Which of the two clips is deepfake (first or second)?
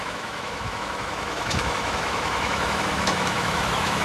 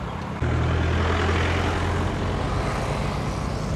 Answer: first